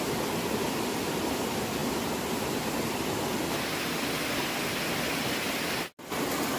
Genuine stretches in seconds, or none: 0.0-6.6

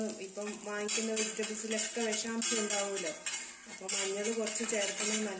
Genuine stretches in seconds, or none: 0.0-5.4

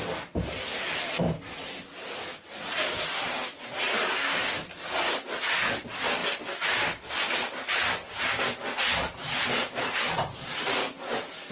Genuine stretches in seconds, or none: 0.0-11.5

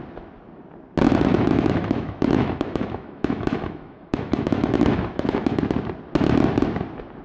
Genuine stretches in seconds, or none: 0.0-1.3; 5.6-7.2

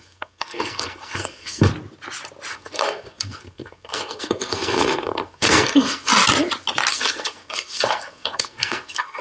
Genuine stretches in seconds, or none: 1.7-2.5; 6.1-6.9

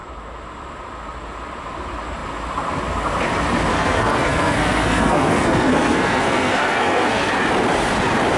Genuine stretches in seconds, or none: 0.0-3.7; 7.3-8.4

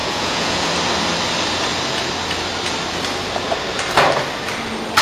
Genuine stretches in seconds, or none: 0.7-5.0